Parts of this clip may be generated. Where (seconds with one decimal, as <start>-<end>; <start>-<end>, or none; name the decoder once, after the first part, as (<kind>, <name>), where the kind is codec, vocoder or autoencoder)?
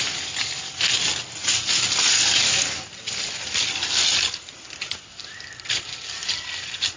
none